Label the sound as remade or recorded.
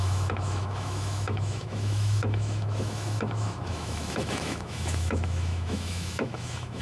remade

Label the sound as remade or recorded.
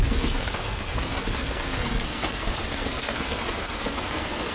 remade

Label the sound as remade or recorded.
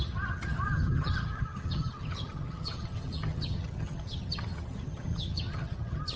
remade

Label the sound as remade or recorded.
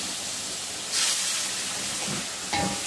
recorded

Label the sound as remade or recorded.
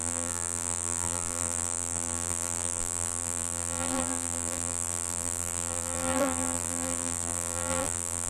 remade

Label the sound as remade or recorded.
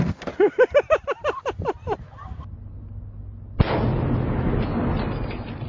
recorded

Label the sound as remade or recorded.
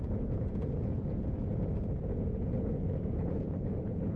remade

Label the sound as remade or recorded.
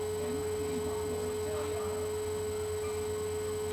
recorded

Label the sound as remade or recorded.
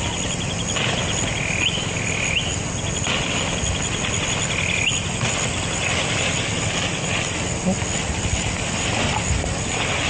recorded